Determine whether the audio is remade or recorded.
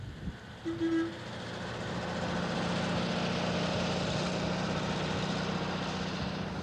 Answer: recorded